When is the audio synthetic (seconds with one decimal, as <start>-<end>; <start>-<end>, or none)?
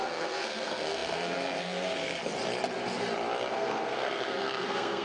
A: 0.0-2.2; 3.5-5.0